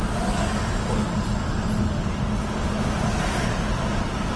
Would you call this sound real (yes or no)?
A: yes